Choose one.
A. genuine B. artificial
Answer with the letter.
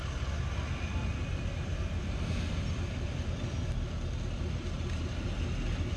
A